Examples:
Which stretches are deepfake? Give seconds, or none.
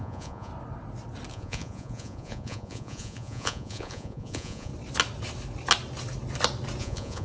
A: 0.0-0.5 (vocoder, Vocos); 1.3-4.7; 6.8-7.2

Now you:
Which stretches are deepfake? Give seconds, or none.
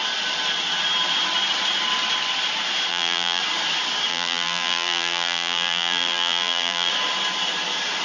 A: 2.9-3.4 (vocoder, BigVGAN v2); 4.1-6.9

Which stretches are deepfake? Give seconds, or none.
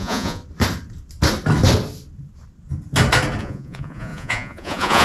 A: 0.0-0.4 (vocoder, Vocos); 3.4-5.0